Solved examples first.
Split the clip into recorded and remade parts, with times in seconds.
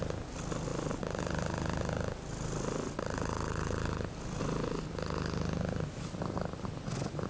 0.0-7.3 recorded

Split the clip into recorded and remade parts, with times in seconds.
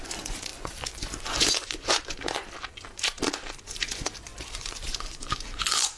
0.0-2.4 remade; 2.4-3.7 recorded; 3.7-6.0 remade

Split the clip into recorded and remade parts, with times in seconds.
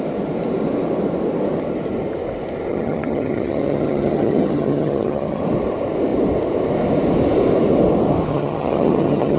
0.0-2.7 recorded; 2.7-5.4 remade; 5.4-8.3 recorded; 8.3-9.4 remade